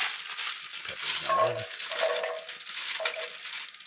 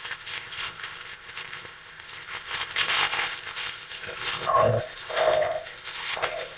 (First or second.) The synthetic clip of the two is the second